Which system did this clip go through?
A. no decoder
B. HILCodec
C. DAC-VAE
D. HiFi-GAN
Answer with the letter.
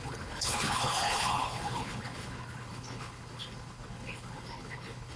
B